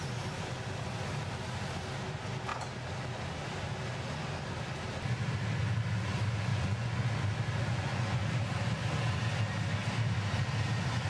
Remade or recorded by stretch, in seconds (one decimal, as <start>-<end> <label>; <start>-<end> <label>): 0.0-6.5 recorded; 6.5-7.1 remade; 7.1-7.7 recorded; 7.7-8.2 remade; 8.2-11.1 recorded